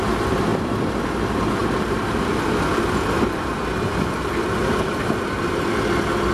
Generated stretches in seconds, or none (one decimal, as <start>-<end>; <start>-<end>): 1.6-5.4